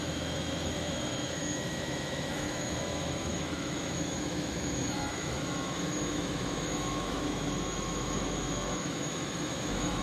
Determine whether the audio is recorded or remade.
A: remade